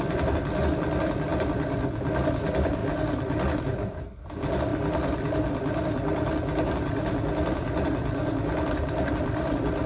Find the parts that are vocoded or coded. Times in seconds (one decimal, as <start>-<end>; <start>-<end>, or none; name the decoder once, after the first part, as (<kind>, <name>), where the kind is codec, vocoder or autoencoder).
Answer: 4.7-9.9 (vocoder, BigVGAN v2)